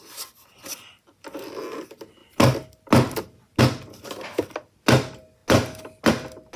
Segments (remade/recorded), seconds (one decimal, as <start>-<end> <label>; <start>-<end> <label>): 0.0-6.6 recorded